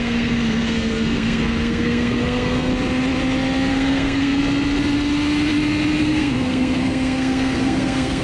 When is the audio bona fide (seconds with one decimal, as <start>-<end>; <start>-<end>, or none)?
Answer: 2.7-3.7; 4.4-6.0